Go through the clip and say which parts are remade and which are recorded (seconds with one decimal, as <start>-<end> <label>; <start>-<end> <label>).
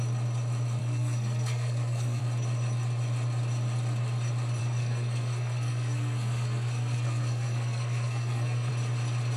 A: 0.0-0.8 recorded; 0.8-2.2 remade; 2.2-4.6 recorded; 4.6-8.7 remade; 8.7-9.4 recorded